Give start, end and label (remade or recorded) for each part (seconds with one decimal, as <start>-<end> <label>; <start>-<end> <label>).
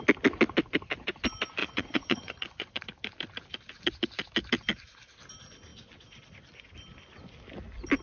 0.0-1.6 recorded; 1.6-2.8 remade; 2.8-8.0 recorded